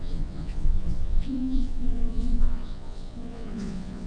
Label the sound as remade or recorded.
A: remade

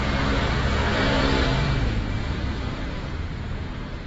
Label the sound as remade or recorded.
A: remade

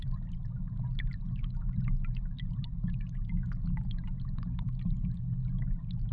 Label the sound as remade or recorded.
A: recorded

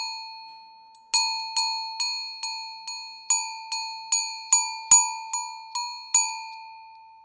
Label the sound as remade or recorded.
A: recorded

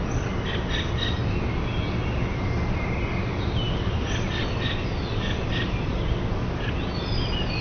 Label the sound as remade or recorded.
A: recorded